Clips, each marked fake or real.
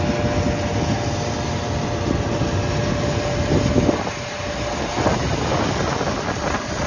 real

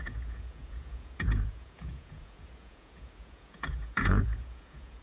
fake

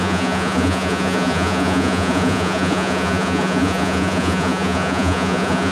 fake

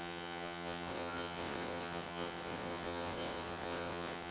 fake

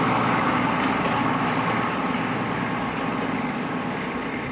real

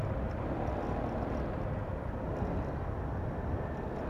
real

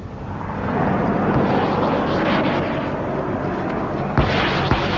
real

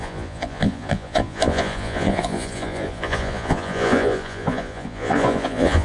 fake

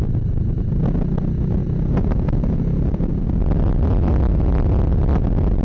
real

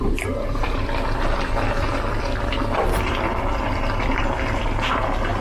fake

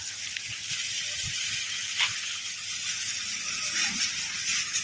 real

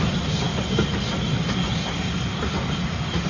real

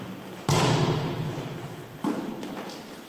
real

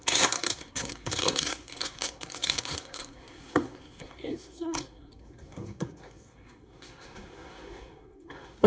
fake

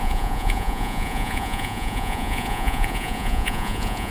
fake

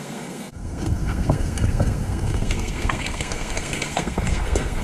fake